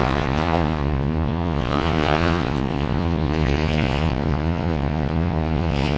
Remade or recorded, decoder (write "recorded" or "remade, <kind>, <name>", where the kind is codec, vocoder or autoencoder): remade, vocoder, Vocos